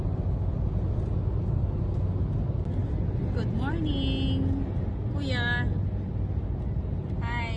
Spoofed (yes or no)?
no